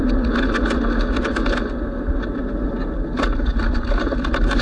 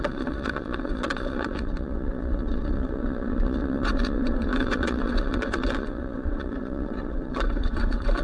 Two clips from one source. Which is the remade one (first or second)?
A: second